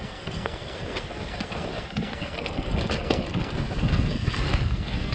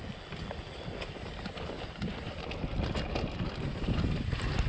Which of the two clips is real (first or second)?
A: second